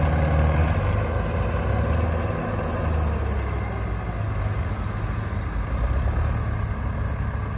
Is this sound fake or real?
real